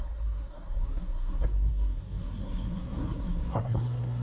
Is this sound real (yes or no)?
no